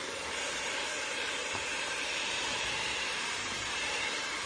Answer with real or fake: fake